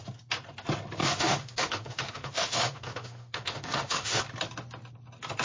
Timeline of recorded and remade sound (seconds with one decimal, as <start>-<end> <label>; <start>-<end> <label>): 0.0-1.0 recorded; 1.0-4.2 remade; 4.2-5.4 recorded